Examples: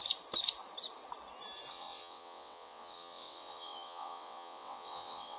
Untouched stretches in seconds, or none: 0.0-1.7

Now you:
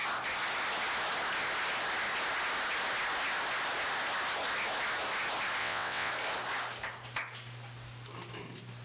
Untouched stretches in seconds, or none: 0.0-5.6; 6.1-8.8

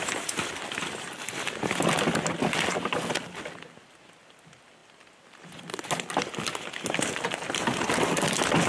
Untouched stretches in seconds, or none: 0.0-8.7

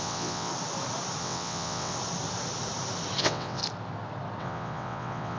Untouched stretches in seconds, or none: 0.5-1.2; 1.9-3.2; 3.6-4.4